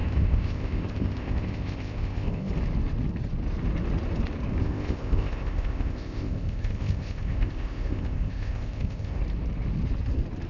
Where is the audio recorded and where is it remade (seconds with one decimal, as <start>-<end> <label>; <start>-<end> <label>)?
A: 0.0-2.5 remade; 2.5-4.6 recorded; 4.6-9.2 remade; 9.2-10.5 recorded